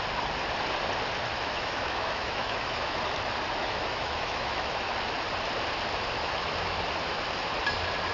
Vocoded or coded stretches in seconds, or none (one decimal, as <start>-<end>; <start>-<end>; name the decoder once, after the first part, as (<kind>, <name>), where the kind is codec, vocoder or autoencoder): 1.3-3.0 (autoencoder, DAC-VAE); 3.6-4.9; 6.2-6.8